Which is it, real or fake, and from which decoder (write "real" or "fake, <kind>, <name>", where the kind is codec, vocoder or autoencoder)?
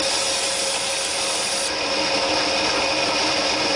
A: real